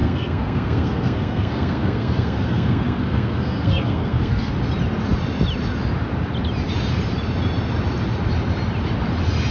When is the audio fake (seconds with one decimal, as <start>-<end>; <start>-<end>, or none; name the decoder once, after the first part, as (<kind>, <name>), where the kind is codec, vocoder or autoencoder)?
0.0-4.5 (codec, SNAC)